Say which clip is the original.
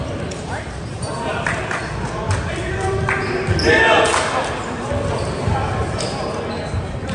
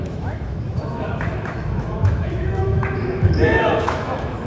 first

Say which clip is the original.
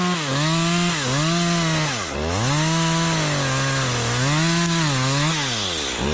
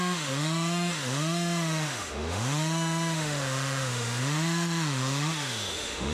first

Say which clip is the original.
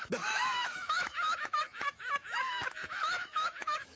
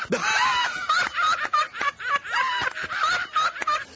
second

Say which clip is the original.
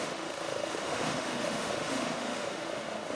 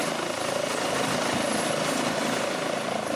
second